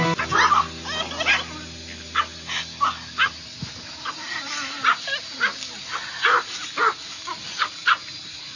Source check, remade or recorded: recorded